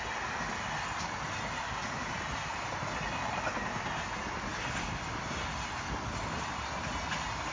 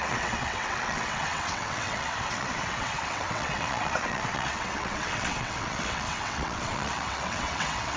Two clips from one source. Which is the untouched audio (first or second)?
first